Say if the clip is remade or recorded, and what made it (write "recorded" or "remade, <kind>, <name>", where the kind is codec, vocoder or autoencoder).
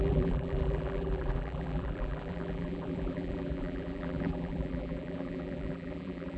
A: remade, vocoder, BigVGAN v2